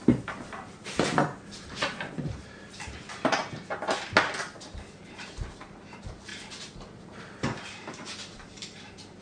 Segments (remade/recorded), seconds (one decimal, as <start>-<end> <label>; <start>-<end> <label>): 0.0-3.4 remade; 3.4-5.0 recorded; 5.0-6.3 remade; 6.3-7.0 recorded; 7.0-9.2 remade